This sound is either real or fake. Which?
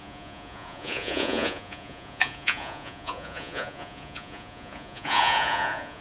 fake